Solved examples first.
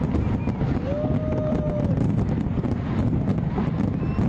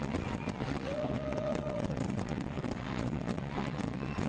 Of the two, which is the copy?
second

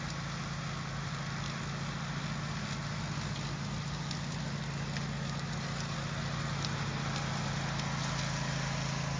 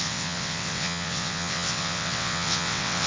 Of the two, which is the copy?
second